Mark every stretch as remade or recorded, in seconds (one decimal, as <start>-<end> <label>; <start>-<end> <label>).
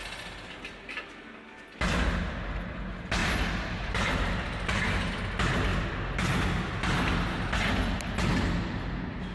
0.0-3.2 recorded; 3.2-5.1 remade; 5.1-9.3 recorded